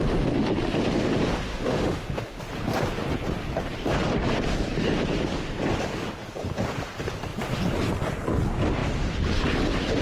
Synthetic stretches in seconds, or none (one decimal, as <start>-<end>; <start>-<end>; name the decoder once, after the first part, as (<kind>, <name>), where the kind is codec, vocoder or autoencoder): 1.5-2.4 (autoencoder, DAC-VAE)